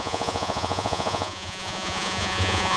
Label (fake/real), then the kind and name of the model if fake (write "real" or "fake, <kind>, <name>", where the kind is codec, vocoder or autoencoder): fake, vocoder, Vocos